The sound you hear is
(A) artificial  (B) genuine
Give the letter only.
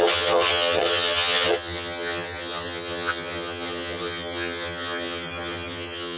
A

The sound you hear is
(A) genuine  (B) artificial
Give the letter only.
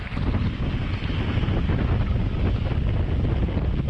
A